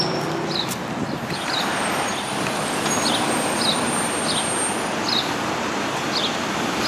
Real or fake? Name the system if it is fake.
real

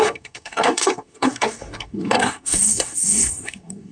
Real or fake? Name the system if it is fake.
fake, codec, SNAC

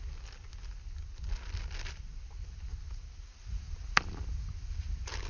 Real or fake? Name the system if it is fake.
real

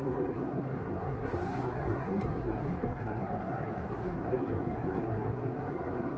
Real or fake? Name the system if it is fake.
fake, codec, SNAC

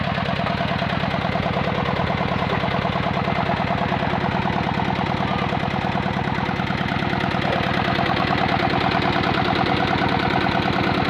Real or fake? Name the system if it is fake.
real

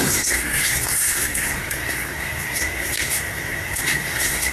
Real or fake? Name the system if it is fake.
fake, codec, SNAC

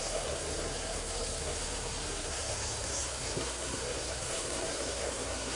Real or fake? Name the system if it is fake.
fake, codec, SNAC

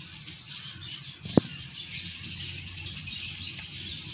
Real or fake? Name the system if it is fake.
real